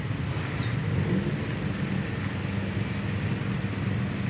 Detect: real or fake real